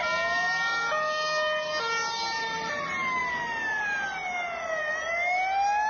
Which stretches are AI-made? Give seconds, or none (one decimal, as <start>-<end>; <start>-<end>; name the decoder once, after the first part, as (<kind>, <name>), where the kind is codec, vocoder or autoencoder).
none